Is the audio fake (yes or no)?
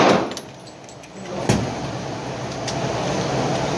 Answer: no